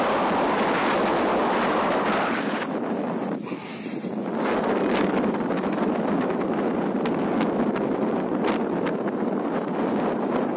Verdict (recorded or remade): recorded